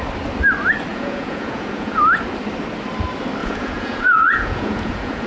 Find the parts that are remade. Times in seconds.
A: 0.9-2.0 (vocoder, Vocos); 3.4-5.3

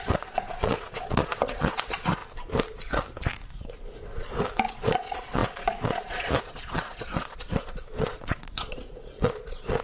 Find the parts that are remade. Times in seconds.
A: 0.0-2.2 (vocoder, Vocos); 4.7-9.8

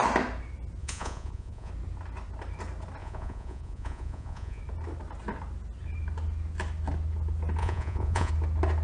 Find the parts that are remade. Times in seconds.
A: 0.8-1.7 (vocoder, Vocos); 3.0-4.6; 7.6-8.3

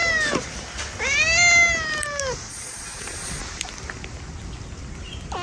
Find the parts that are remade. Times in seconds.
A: 2.5-3.4 (vocoder, Vocos)

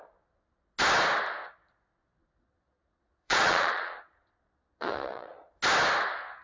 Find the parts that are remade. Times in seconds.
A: 2.4-5.6 (vocoder, Vocos)

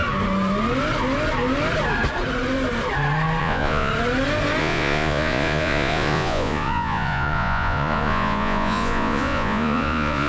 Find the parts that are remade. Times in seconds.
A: 3.4-3.9 (vocoder, Vocos); 4.6-10.3